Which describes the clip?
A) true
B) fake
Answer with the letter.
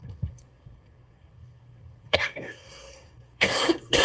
B